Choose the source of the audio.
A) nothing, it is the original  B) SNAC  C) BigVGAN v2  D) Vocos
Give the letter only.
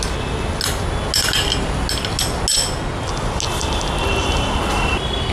A